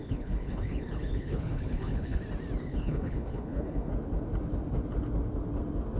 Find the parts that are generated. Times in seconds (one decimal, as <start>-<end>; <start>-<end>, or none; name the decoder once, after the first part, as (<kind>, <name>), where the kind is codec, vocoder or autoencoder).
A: 0.0-2.2 (codec, HILCodec); 2.7-3.9